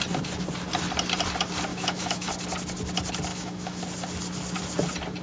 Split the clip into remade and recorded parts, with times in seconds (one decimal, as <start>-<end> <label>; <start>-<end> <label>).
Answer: 0.0-1.7 recorded; 1.7-2.3 remade; 2.3-3.3 recorded; 3.3-3.8 remade; 3.8-5.2 recorded